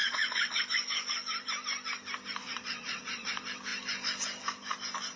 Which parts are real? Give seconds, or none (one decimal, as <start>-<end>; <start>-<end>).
0.6-2.4; 3.3-5.2